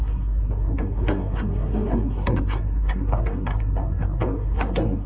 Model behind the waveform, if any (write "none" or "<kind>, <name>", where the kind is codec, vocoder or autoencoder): codec, SNAC